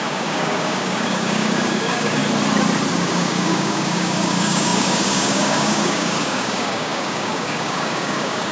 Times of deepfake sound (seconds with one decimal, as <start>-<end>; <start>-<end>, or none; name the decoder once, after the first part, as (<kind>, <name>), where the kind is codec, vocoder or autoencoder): 0.0-2.2 (codec, DAC); 2.9-8.5